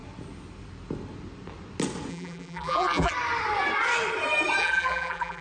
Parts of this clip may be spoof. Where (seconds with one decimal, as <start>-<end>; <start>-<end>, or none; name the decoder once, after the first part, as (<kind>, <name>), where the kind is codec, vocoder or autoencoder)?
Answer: 2.1-3.1 (vocoder, BigVGAN v2); 4.6-5.4